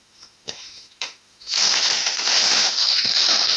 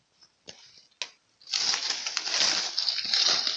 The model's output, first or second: first